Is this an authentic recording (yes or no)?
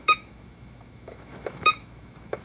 no